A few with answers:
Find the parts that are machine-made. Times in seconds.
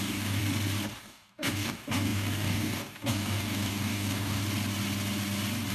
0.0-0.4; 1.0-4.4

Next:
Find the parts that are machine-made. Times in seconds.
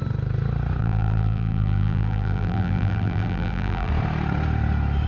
0.8-3.9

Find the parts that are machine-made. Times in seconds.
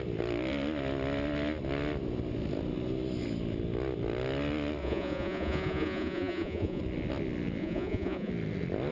4.8-6.8; 7.6-8.3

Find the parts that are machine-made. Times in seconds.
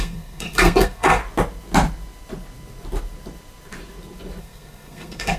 0.0-1.2; 4.4-5.4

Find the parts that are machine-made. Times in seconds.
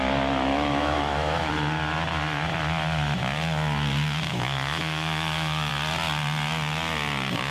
0.5-1.5; 4.3-5.7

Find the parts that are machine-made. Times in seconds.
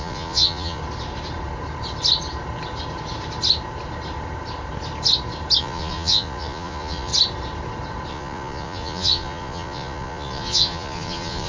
0.0-0.8; 5.6-7.1; 8.1-11.5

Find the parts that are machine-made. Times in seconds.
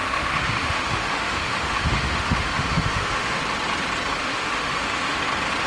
0.0-3.4; 4.2-5.2